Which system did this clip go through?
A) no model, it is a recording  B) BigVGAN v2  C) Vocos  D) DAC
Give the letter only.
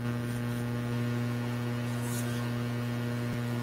A